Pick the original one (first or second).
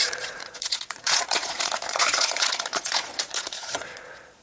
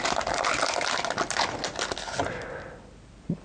second